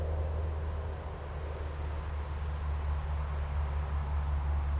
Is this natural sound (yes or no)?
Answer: yes